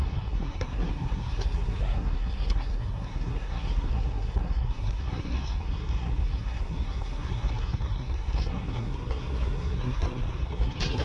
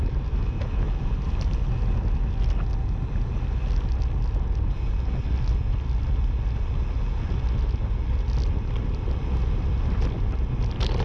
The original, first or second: second